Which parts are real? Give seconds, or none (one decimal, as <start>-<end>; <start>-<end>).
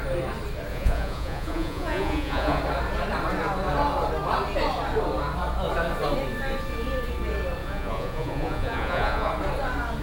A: 0.0-0.7; 2.6-7.6; 9.3-10.0